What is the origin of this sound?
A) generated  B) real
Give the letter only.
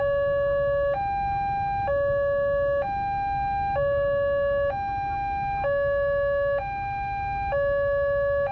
B